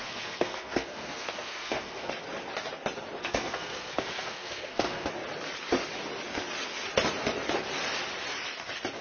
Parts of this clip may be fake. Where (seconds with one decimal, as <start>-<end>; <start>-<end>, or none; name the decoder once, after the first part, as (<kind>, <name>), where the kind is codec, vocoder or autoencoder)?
0.0-2.1 (codec, SNAC); 3.2-5.1

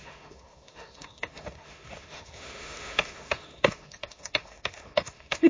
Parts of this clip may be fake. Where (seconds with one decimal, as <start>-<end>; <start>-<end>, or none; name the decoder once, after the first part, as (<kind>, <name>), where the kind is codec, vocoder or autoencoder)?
0.0-5.5 (autoencoder, DAC-VAE)

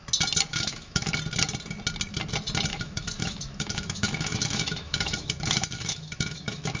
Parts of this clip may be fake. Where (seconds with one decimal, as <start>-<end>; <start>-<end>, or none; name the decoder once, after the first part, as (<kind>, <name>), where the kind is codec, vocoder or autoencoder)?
0.5-1.1 (autoencoder, DAC-VAE); 2.7-6.8